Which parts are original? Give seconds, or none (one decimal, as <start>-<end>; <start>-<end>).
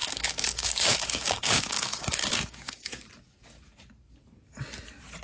3.1-5.2